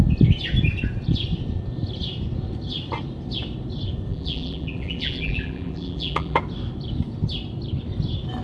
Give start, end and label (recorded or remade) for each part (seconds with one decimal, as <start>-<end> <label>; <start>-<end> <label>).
0.0-4.1 recorded; 4.1-6.4 remade; 6.4-8.4 recorded